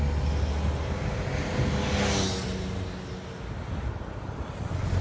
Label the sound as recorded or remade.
recorded